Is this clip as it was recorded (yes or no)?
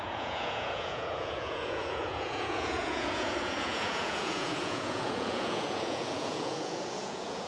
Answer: no